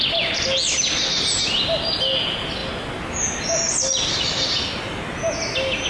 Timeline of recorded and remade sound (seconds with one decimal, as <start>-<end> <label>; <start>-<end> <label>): 0.0-5.9 recorded